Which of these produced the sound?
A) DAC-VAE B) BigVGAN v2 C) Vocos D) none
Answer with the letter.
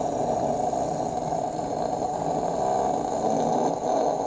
D